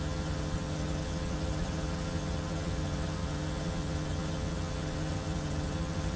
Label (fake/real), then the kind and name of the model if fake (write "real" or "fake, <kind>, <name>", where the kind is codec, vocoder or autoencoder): fake, vocoder, HiFi-GAN